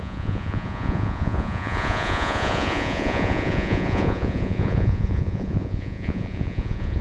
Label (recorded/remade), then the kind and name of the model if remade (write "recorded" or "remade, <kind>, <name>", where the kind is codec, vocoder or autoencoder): remade, vocoder, Vocos